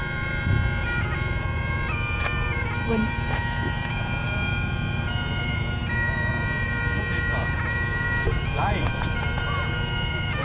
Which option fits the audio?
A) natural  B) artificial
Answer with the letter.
B